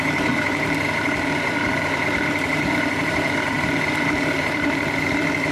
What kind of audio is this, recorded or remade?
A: remade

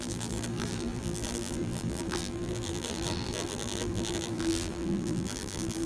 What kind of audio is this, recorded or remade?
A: remade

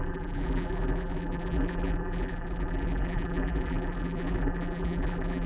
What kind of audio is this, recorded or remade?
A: remade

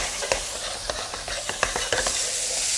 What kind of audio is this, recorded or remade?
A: recorded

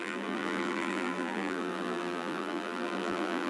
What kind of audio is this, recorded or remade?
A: remade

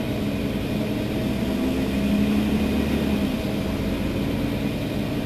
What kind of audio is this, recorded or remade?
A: recorded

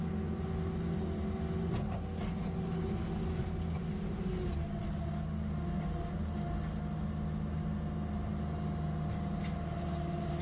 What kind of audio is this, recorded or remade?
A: recorded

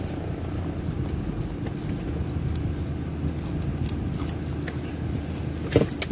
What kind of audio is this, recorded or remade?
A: recorded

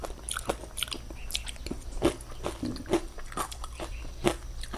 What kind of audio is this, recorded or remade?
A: recorded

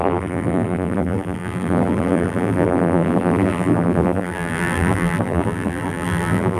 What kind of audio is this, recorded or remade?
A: remade